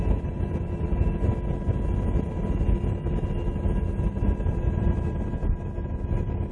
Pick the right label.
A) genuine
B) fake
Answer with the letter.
A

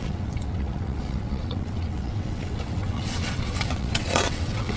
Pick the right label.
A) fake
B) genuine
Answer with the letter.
A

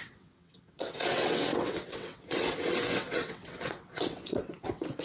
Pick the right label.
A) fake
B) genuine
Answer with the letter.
A